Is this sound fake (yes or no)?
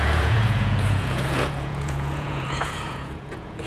yes